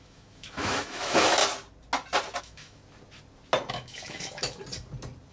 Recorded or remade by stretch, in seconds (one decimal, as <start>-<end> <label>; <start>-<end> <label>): 0.0-1.4 remade; 1.4-2.4 recorded; 2.4-2.8 remade; 2.8-3.7 recorded; 3.7-4.6 remade; 4.6-5.3 recorded